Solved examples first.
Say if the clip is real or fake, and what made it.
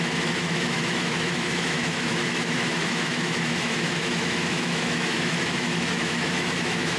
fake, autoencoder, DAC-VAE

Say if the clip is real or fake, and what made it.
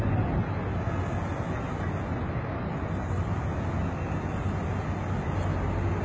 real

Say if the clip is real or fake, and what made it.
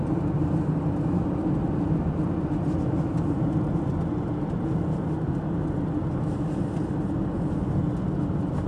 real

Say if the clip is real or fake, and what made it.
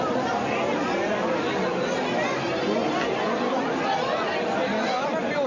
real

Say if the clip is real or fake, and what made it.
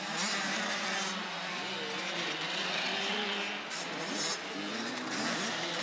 real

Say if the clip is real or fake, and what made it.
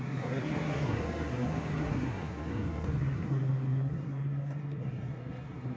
fake, codec, SNAC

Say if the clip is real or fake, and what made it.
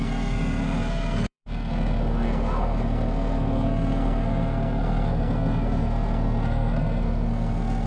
fake, codec, SNAC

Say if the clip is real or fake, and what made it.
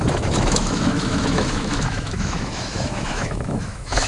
fake, autoencoder, DAC-VAE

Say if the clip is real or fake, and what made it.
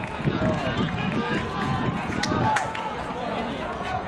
fake, vocoder, Vocos